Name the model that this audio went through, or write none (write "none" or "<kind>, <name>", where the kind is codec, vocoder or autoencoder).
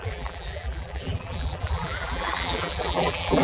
vocoder, BigVGAN v2